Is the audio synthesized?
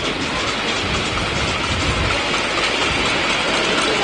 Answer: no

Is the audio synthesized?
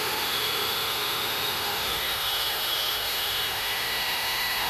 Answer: yes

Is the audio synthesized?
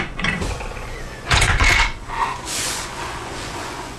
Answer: yes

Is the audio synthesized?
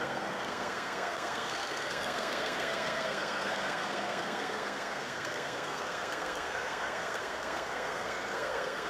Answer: yes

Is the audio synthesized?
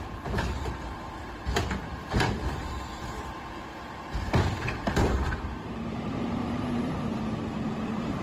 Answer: yes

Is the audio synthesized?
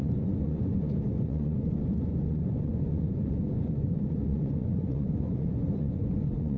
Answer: yes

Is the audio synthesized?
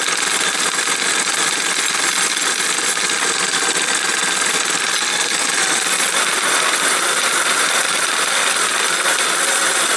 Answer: no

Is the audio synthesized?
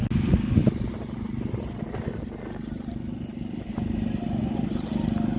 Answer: no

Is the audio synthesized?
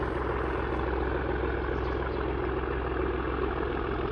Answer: no